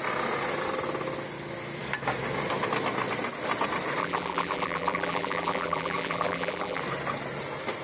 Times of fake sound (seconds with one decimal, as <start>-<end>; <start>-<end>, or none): 4.0-6.8